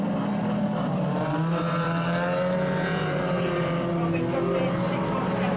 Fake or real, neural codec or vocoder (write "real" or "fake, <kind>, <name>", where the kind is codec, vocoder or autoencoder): real